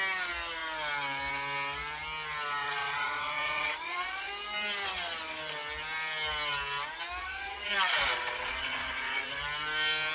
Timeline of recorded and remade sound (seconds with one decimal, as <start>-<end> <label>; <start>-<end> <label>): 0.0-2.6 recorded; 2.6-4.3 remade; 4.3-7.2 recorded; 7.2-9.4 remade; 9.4-10.1 recorded